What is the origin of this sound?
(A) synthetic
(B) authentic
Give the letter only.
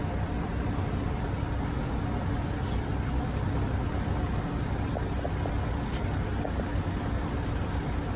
B